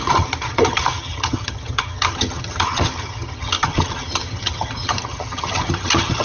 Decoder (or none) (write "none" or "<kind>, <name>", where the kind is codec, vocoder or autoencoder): vocoder, HiFi-GAN